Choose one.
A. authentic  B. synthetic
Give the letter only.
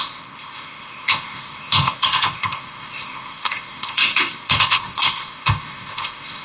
B